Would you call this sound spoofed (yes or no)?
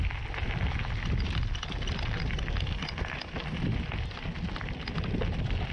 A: no